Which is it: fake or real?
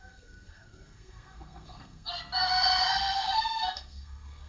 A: fake